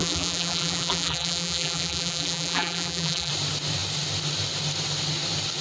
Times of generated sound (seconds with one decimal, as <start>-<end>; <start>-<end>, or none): 0.0-3.3